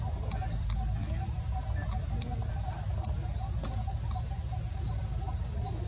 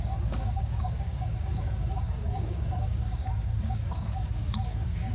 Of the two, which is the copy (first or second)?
second